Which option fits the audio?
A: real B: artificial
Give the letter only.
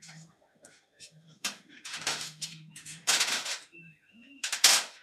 B